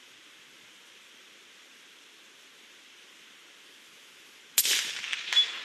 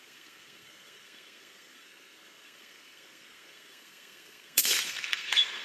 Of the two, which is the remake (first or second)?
second